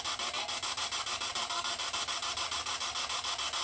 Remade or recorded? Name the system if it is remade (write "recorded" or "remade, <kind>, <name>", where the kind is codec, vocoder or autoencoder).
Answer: recorded